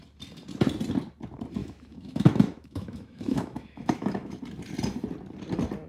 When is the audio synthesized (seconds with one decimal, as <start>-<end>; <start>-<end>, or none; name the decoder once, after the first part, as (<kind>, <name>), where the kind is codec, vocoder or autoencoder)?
1.6-4.4 (autoencoder, DAC-VAE)